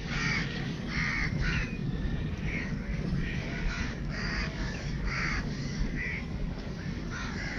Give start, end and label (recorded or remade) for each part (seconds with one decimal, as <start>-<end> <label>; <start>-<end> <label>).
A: 0.0-7.6 remade